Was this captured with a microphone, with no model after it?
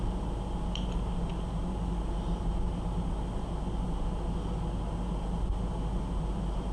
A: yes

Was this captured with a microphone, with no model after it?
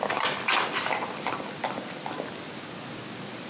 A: yes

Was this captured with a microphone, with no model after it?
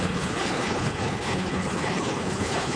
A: no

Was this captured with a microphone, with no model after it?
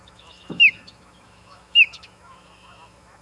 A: no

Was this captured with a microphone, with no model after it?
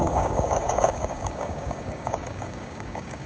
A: no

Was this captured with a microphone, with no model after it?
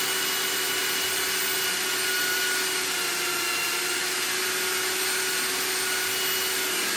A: yes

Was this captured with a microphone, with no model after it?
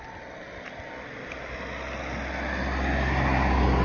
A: yes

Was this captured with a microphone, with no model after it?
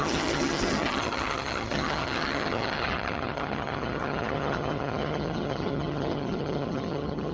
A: no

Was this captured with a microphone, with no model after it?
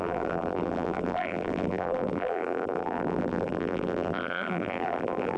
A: no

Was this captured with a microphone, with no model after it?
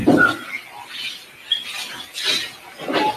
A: yes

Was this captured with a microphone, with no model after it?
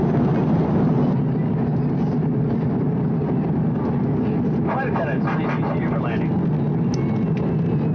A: yes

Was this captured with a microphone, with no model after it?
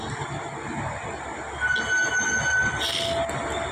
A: yes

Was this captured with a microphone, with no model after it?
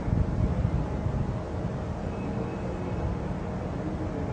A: yes